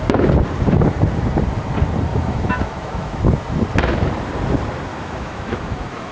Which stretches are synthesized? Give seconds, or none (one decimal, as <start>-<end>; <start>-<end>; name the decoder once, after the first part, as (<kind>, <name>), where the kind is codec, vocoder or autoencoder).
2.1-3.2 (autoencoder, DAC-VAE); 4.9-6.1